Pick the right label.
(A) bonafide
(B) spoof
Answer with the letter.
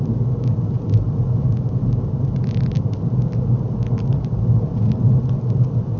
A